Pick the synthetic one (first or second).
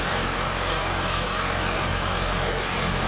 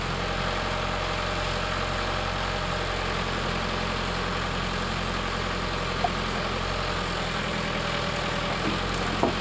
first